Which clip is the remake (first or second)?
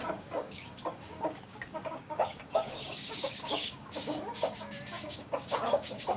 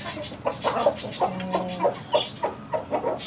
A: first